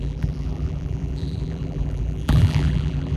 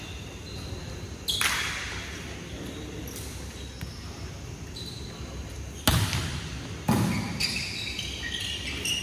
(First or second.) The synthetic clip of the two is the first